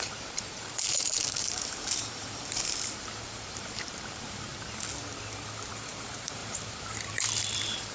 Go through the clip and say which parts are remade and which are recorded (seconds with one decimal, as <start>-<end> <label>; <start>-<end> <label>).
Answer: 0.0-4.5 remade; 4.5-5.7 recorded; 5.7-7.9 remade

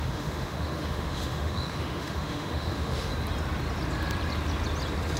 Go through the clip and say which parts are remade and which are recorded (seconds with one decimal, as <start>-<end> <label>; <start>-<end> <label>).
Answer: 0.0-3.1 remade; 3.1-5.2 recorded

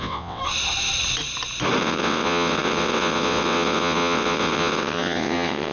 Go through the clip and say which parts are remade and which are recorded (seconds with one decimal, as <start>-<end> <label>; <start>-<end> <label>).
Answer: 0.0-0.4 remade; 0.4-1.8 recorded; 1.8-5.7 remade

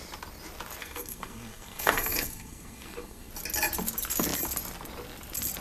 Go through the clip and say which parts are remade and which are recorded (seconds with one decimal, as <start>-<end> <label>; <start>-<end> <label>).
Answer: 0.0-0.8 recorded; 0.8-3.3 remade; 3.3-5.6 recorded